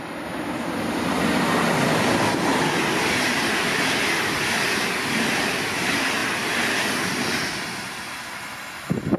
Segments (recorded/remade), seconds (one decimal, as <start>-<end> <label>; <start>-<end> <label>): 0.0-9.2 recorded